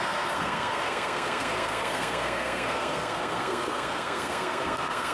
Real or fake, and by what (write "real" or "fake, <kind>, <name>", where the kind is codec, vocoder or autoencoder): fake, codec, SNAC